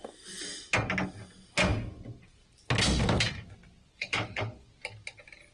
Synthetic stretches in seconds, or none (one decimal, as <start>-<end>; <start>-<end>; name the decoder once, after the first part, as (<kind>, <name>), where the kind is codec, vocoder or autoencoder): 3.8-4.7 (codec, HILCodec)